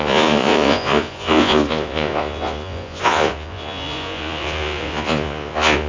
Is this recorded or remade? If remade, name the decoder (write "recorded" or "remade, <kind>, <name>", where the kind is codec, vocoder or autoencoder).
remade, vocoder, Vocos